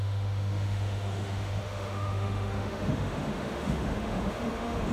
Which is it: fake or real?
fake